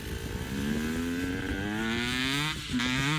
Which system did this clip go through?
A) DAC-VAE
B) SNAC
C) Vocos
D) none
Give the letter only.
D